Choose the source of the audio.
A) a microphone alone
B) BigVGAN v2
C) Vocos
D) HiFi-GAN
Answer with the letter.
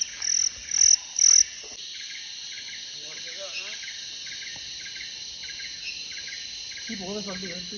A